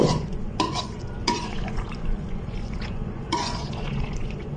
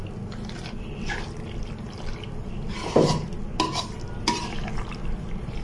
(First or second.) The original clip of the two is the second